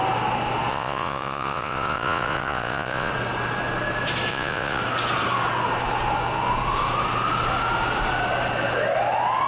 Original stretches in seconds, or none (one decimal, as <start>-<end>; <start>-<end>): 0.0-0.7; 3.1-4.3; 4.8-9.5